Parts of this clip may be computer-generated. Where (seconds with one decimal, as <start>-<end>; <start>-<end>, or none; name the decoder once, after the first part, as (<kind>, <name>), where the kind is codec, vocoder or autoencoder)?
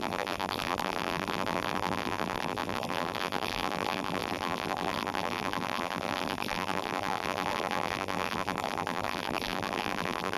0.0-10.4 (vocoder, BigVGAN v2)